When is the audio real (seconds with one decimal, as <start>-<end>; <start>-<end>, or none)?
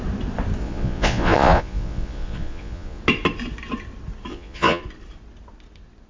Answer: 0.0-0.6; 3.0-4.3; 4.8-6.1